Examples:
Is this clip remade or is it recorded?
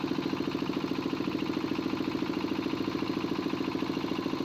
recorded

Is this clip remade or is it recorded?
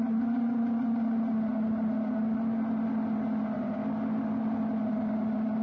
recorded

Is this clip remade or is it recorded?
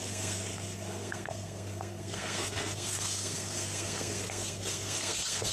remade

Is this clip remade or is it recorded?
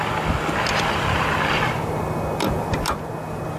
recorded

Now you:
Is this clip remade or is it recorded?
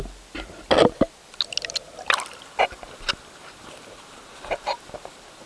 recorded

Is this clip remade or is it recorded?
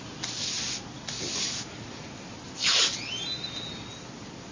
recorded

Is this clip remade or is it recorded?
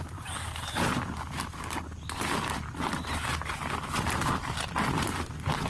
recorded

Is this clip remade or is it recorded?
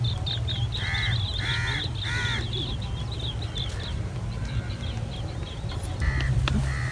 recorded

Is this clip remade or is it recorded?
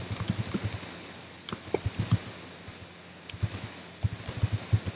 recorded